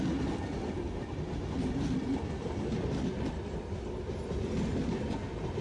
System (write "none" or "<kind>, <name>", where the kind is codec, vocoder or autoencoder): none